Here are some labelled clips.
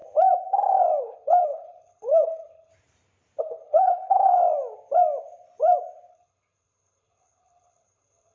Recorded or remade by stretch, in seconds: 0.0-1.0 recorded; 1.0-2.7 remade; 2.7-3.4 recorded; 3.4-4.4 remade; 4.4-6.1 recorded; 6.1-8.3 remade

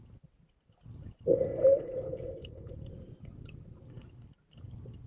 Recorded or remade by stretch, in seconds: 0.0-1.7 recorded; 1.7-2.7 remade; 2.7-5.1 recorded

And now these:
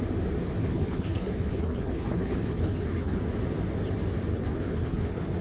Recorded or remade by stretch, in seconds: 0.0-0.6 recorded; 0.6-3.2 remade; 3.2-4.3 recorded; 4.3-5.4 remade